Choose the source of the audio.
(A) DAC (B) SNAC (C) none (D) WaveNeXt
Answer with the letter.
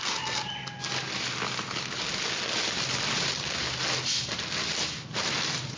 C